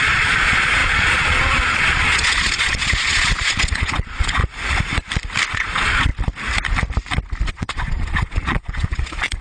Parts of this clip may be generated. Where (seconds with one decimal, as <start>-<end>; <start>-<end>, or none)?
0.0-4.4; 5.5-6.1; 7.5-9.4